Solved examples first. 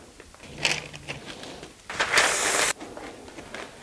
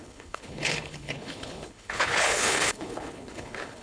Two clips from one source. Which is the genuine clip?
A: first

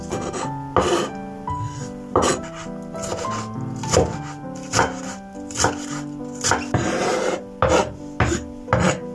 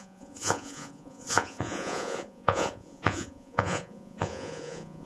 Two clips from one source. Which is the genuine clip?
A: first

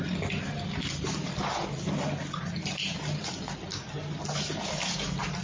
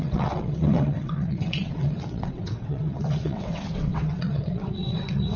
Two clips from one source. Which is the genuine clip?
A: first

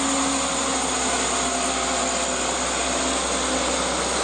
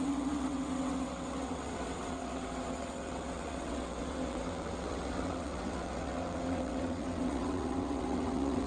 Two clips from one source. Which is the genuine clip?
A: first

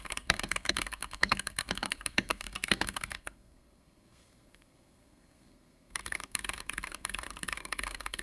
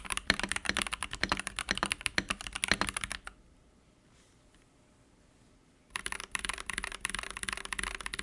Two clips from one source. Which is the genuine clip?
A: second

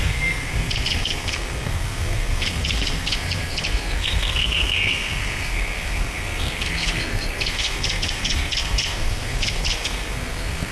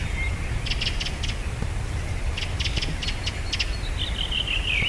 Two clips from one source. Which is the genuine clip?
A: second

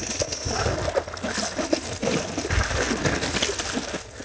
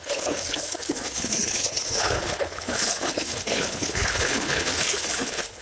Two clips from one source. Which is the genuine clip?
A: first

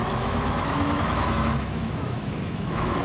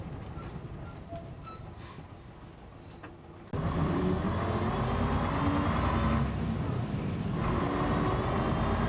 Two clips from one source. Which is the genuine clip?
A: second